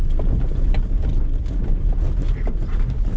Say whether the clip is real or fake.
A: real